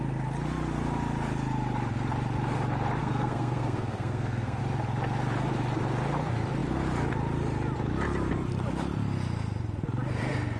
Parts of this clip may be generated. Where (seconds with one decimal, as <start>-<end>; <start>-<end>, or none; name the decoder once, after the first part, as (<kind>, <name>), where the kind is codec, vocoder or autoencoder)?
3.0-4.6 (codec, SNAC)